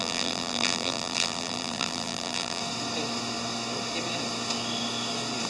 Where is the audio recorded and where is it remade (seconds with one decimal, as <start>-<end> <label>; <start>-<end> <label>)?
0.0-2.6 remade; 2.6-5.5 recorded